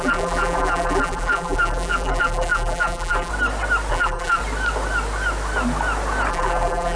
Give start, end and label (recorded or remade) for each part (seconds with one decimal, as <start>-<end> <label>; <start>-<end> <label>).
0.0-3.3 remade; 3.3-3.9 recorded; 3.9-4.4 remade; 4.4-6.3 recorded; 6.3-7.0 remade